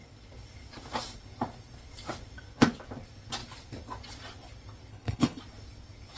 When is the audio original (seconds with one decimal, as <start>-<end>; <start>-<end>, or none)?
0.0-4.9; 5.4-6.2